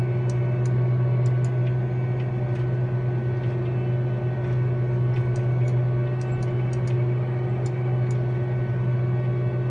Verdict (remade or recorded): recorded